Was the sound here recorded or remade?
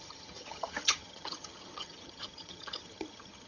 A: remade